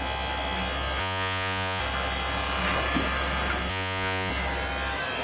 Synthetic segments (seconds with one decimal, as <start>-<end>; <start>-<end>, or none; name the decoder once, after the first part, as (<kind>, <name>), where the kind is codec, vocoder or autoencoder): 1.0-1.8 (vocoder, Vocos); 3.7-4.3

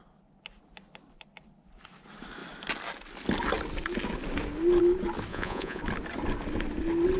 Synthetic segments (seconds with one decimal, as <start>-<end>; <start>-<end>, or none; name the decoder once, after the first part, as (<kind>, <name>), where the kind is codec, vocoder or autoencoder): 5.3-5.8 (vocoder, Vocos)

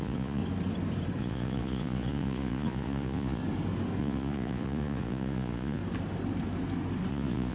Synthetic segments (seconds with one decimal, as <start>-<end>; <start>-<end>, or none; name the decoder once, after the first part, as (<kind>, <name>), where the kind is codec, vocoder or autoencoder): 0.0-0.4 (vocoder, Vocos); 1.2-3.4; 4.0-5.8; 7.1-7.5

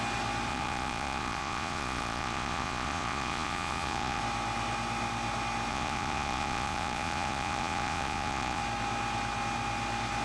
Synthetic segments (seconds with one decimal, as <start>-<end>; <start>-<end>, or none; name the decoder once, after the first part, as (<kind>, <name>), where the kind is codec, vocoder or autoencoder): 0.5-4.2 (vocoder, Vocos); 5.7-8.6

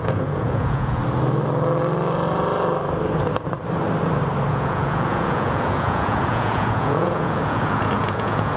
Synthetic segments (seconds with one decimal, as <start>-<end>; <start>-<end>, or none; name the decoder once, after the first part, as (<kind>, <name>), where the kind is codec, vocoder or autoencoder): 0.0-1.0 (vocoder, Vocos); 4.5-8.6